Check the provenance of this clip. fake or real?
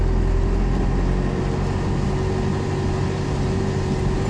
real